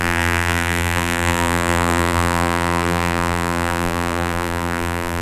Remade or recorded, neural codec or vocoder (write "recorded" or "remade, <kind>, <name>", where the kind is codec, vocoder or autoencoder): remade, vocoder, BigVGAN v2